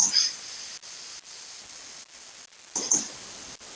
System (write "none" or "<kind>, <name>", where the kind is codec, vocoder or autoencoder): none